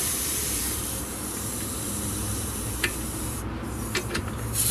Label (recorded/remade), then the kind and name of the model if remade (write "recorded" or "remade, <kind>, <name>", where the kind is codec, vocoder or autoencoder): remade, vocoder, BigVGAN v2